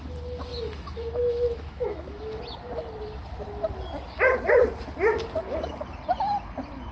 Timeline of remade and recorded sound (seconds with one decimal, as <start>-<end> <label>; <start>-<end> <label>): 0.0-0.5 recorded; 0.5-2.4 remade; 2.4-6.9 recorded